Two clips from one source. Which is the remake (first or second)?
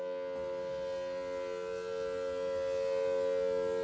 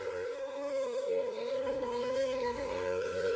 second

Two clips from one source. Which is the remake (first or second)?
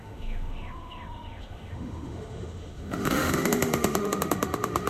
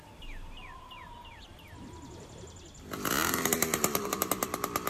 first